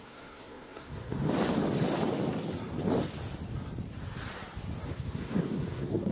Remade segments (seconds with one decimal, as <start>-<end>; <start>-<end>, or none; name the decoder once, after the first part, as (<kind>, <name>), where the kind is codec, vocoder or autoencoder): 0.0-1.2 (codec, SNAC); 4.9-6.1